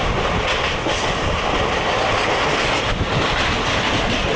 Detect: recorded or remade recorded